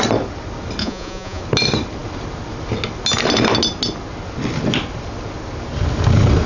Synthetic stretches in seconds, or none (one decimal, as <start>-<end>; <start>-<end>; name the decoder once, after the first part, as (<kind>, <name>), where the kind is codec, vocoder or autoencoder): 0.8-1.4 (vocoder, Vocos)